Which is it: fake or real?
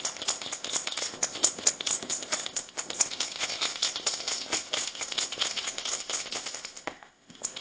fake